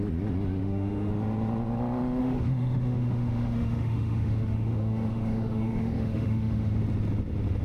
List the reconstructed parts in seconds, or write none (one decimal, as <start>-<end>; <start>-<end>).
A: 0.6-1.1; 2.2-6.8